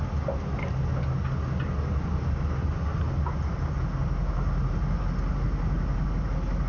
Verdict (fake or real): real